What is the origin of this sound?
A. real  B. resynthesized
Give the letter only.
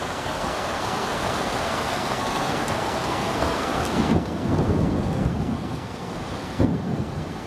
B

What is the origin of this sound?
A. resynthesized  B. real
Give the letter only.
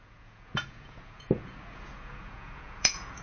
A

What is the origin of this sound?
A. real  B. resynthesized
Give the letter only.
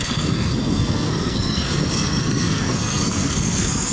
B